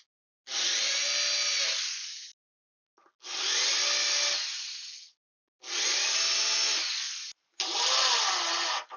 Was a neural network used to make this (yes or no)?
no